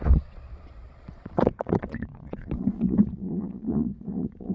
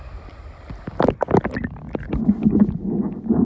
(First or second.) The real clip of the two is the second